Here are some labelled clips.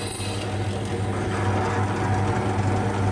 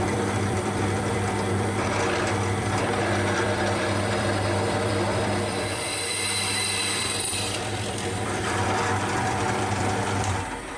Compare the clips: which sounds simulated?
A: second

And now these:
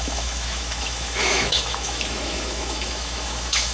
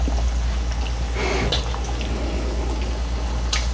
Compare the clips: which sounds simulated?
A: first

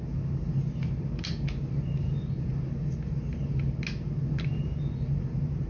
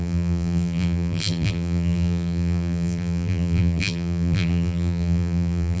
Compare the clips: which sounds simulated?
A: second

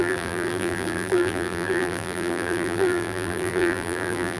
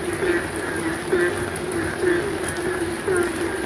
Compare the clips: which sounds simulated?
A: first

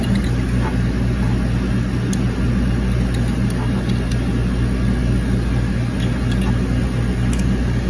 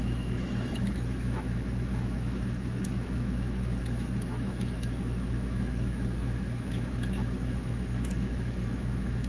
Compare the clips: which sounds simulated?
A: second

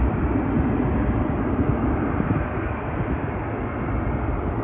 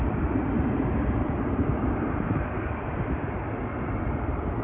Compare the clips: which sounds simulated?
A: second